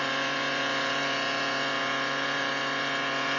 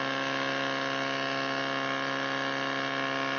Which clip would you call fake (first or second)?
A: first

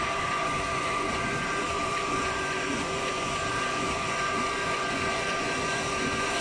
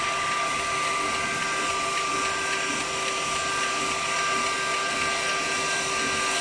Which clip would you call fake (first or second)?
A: first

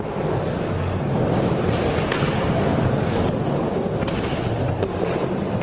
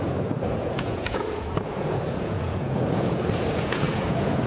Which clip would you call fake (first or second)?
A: second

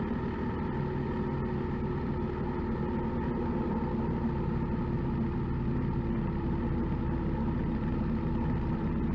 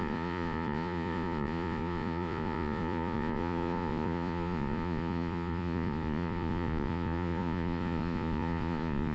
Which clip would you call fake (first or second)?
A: second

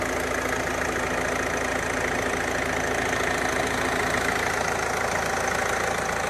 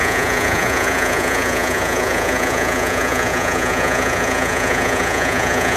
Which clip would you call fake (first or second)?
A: second